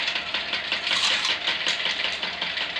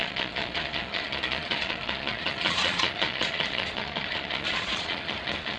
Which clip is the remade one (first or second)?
second